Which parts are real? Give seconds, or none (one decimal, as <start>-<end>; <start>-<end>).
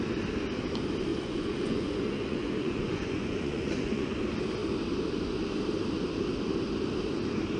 0.0-1.1; 4.1-7.6